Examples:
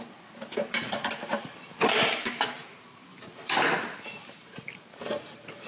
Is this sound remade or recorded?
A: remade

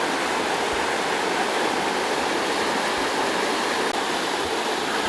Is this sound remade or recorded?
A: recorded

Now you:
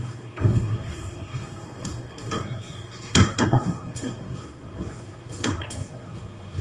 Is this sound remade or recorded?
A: remade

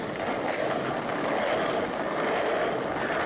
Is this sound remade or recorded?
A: recorded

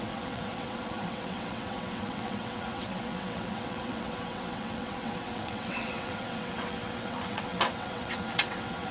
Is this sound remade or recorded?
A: remade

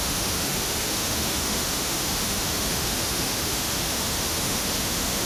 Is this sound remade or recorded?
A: remade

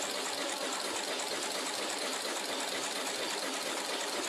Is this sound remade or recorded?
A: recorded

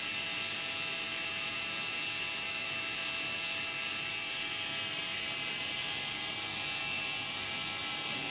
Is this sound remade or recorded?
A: recorded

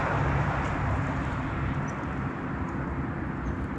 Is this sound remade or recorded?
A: recorded